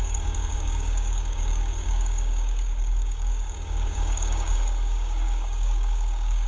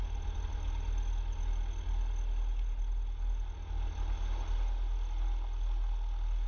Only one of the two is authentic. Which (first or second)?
second